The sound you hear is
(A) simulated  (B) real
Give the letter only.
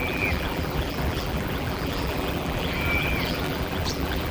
A